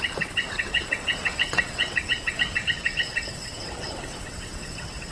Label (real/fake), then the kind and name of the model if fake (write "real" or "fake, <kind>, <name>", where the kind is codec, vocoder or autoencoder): fake, vocoder, WaveNeXt